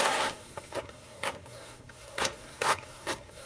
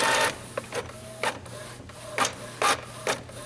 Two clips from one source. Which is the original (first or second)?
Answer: second